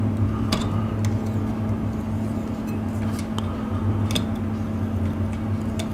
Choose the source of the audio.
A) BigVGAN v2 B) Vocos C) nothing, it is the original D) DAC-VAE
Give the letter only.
C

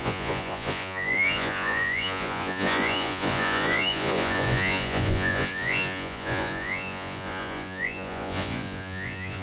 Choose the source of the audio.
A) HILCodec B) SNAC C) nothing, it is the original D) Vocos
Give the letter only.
D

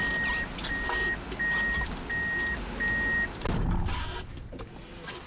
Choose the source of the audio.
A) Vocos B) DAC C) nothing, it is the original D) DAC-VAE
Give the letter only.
C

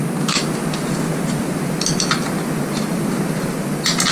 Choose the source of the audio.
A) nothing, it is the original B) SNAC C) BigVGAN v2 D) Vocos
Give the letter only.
A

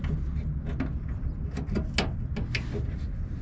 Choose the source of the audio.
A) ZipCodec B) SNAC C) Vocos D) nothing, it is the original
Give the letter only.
D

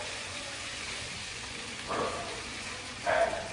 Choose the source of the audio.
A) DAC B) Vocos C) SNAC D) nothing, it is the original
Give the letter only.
B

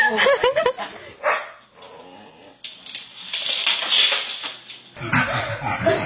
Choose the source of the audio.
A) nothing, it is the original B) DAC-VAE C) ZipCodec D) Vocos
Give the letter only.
A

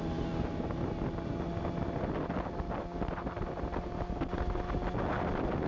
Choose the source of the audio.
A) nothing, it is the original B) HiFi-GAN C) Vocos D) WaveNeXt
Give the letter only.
A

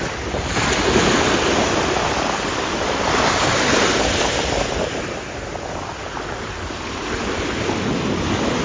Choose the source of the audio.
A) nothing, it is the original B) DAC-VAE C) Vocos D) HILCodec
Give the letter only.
A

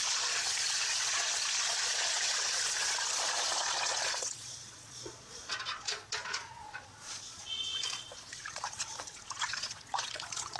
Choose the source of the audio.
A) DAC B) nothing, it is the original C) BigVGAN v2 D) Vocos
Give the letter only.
D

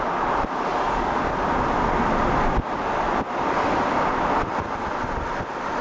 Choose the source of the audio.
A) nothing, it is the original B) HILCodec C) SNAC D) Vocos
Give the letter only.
A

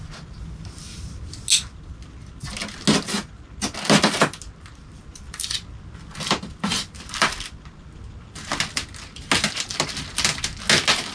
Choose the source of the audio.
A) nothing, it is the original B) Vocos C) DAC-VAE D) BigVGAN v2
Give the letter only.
A